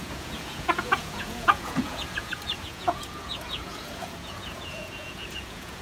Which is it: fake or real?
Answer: fake